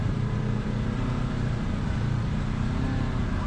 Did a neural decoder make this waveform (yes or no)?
yes